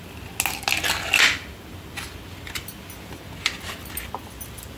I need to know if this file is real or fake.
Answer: real